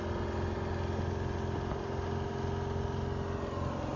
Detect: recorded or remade recorded